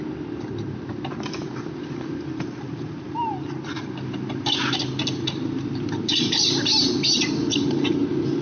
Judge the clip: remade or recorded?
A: recorded